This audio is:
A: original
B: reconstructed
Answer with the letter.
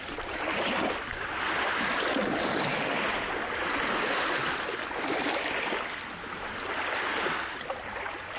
A